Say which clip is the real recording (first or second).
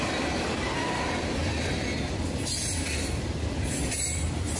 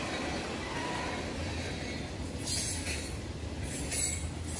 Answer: second